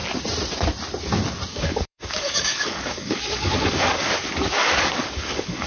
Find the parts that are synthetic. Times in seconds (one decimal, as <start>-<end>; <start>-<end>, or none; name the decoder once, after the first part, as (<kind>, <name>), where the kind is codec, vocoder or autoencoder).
1.5-4.1 (codec, DAC); 4.6-5.7